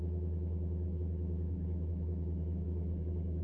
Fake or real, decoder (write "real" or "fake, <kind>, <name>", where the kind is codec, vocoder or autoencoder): fake, autoencoder, DAC-VAE